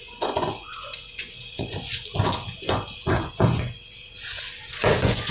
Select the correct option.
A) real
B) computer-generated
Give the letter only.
B